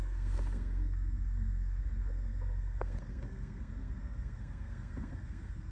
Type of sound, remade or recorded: remade